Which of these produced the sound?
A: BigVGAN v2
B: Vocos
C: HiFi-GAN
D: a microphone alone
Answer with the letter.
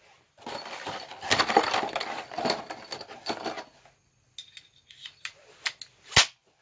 D